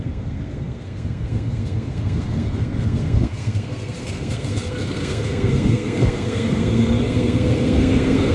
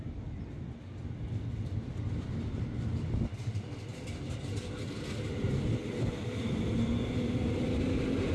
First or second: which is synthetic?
first